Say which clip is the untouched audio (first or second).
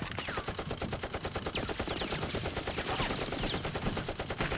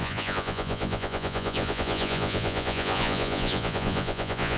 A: first